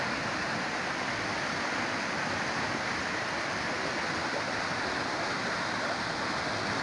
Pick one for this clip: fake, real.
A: real